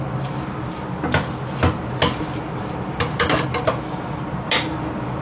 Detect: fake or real real